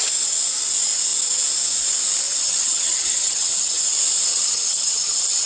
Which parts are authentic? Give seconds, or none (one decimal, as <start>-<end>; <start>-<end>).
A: 0.0-2.4; 3.8-4.3